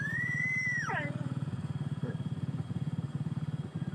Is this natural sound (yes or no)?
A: no